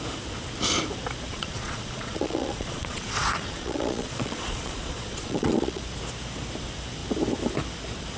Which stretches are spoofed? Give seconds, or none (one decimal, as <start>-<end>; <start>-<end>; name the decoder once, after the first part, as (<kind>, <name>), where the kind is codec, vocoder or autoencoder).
1.3-5.8 (vocoder, Vocos)